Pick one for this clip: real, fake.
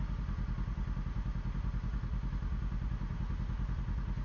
real